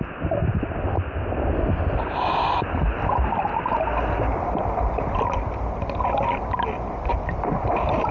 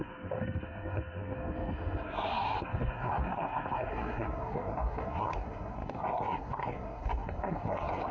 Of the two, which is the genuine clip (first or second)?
first